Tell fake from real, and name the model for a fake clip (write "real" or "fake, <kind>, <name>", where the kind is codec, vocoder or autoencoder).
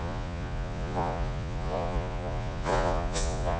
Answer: fake, vocoder, Vocos